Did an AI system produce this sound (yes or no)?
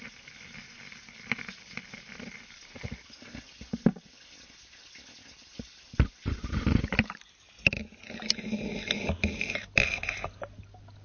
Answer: no